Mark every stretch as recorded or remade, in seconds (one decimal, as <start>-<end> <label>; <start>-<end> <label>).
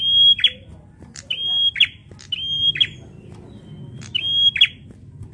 0.0-5.3 recorded